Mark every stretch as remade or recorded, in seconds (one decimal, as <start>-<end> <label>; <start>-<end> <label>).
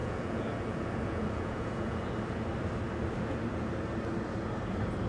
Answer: 0.0-2.1 remade; 2.1-5.1 recorded